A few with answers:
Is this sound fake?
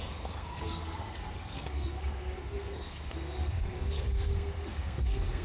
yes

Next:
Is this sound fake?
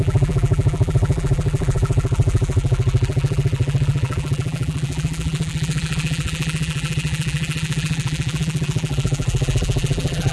yes